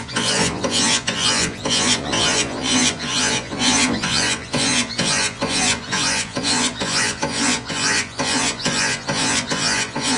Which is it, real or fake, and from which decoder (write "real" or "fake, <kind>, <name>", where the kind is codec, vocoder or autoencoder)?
fake, vocoder, Vocos